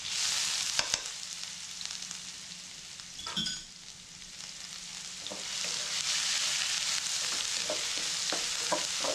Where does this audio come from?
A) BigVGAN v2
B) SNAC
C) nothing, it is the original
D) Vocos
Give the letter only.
C